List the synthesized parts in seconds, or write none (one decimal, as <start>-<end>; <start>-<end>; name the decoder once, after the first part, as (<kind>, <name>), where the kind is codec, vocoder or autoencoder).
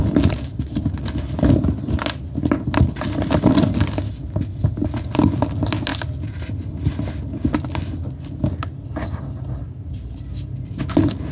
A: none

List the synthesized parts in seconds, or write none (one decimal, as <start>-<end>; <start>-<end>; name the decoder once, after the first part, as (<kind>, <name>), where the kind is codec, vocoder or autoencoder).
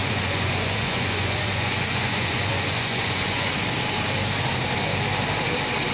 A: 0.0-3.5 (vocoder, Vocos)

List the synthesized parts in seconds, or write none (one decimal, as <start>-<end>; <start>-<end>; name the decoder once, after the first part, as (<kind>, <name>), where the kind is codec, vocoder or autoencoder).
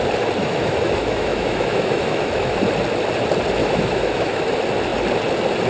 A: 0.4-2.6 (autoencoder, DAC-VAE); 3.6-4.4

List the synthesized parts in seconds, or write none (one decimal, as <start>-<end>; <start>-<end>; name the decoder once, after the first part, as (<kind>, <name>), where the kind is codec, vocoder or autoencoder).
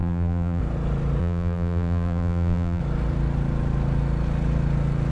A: 0.0-0.6 (vocoder, BigVGAN v2); 1.2-2.8